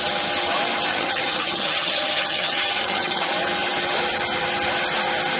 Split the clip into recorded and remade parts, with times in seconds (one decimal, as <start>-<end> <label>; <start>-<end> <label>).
0.0-0.9 recorded; 0.9-3.3 remade; 3.3-5.4 recorded